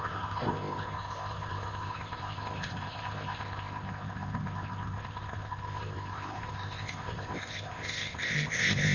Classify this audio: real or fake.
fake